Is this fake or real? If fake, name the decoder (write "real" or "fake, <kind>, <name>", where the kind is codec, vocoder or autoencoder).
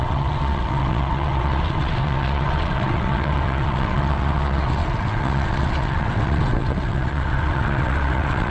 fake, vocoder, WaveNeXt